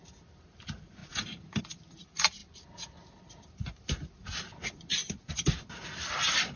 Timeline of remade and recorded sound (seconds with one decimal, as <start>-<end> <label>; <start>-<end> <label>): 0.0-2.4 remade; 2.4-3.1 recorded; 3.1-6.6 remade